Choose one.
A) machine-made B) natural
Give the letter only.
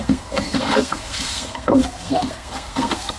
A